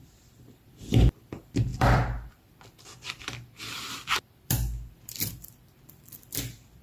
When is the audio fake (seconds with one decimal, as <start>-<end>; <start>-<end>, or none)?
0.0-6.8